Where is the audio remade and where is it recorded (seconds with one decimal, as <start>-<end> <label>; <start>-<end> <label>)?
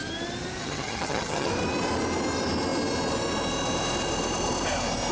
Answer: 0.0-0.6 recorded; 0.6-1.5 remade; 1.5-5.1 recorded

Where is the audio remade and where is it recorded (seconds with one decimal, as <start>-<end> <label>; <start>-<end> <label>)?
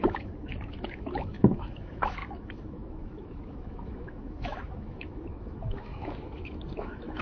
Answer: 0.0-7.2 remade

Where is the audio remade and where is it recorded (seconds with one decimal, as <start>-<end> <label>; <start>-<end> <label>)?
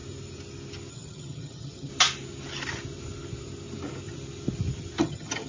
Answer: 0.0-0.9 recorded; 0.9-1.9 remade; 1.9-5.0 recorded; 5.0-5.5 remade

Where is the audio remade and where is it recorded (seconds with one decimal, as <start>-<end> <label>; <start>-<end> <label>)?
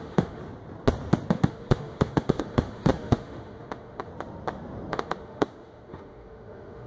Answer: 0.0-0.4 remade; 0.4-1.3 recorded; 1.3-4.1 remade; 4.1-4.9 recorded; 4.9-6.9 remade